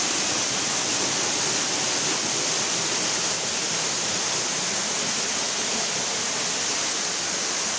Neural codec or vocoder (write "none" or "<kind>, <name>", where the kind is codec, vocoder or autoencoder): none